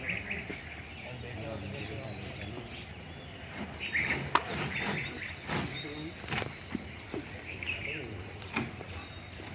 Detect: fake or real real